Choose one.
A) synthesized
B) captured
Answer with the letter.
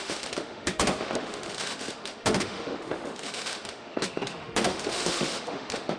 A